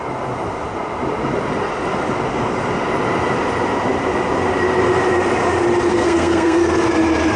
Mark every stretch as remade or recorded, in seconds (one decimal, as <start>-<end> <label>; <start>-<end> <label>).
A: 0.0-5.9 recorded; 5.9-6.6 remade; 6.6-7.4 recorded